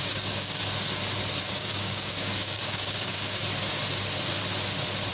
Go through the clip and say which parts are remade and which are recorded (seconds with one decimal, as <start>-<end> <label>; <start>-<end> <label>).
0.0-0.6 remade; 0.6-1.4 recorded; 1.4-3.4 remade; 3.4-5.1 recorded